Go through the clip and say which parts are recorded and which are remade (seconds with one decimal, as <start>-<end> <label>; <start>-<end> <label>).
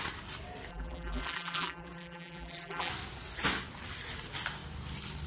0.0-0.7 recorded; 0.7-2.9 remade; 2.9-5.3 recorded